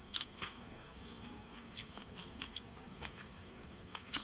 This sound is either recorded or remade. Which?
remade